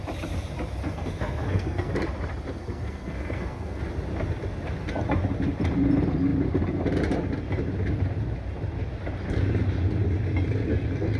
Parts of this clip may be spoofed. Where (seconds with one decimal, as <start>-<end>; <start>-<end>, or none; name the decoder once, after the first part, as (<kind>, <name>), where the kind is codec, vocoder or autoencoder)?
0.8-1.9 (codec, SNAC); 2.6-3.8